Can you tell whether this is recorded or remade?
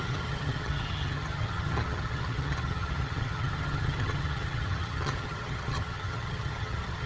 remade